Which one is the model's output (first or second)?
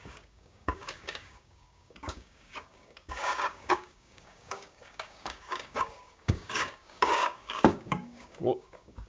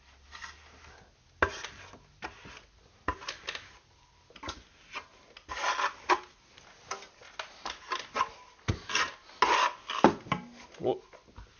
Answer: first